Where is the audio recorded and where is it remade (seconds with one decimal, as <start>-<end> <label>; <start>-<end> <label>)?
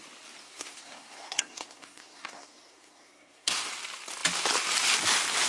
0.0-0.4 recorded; 0.4-3.7 remade; 3.7-5.5 recorded